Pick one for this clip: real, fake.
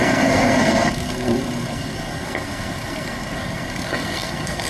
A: fake